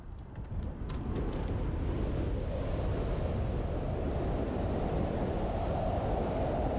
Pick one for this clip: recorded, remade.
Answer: recorded